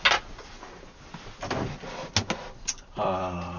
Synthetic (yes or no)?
no